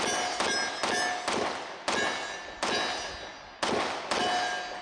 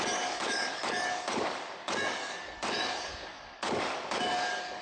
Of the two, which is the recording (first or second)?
first